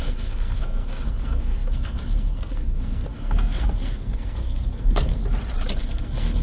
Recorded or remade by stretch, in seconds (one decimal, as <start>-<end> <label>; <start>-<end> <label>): 0.0-5.2 remade; 5.2-5.8 recorded; 5.8-6.4 remade